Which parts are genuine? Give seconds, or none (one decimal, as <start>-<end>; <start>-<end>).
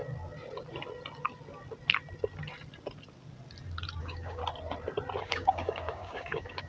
0.0-4.0; 4.4-5.2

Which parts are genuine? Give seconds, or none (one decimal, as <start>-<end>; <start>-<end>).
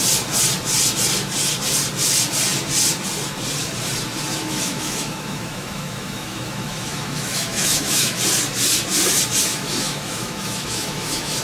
0.0-4.3; 8.2-9.5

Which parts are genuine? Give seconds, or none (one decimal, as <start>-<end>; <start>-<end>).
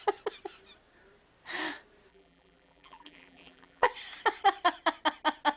0.0-2.1; 3.9-5.6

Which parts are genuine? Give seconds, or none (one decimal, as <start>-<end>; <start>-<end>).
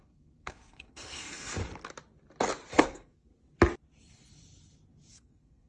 1.6-2.7; 3.3-5.1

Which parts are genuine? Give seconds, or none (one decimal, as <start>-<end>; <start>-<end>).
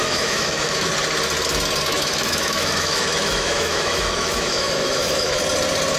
0.9-1.9; 5.4-6.0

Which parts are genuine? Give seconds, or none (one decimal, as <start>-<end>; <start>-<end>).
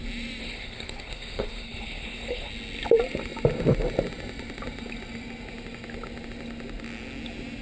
0.0-0.4; 2.5-7.6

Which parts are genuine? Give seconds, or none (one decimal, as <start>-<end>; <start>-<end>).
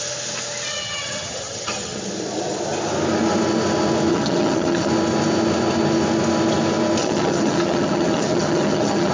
0.0-0.7; 2.0-4.1; 4.9-7.0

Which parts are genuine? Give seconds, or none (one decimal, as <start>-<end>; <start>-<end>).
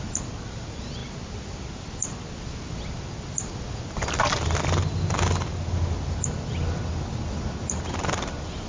0.0-8.7